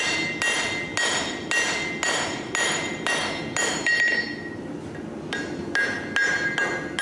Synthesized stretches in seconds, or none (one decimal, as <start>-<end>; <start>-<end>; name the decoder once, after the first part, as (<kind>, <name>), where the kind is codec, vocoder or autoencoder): none